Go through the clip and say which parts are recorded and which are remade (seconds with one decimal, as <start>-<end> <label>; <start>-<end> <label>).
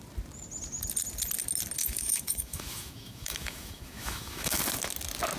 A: 0.0-1.8 recorded; 1.8-4.6 remade; 4.6-5.4 recorded